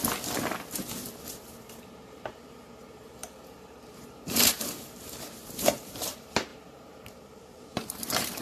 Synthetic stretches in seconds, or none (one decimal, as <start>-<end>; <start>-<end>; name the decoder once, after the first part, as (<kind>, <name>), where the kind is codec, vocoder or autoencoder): 1.2-8.4 (vocoder, BigVGAN v2)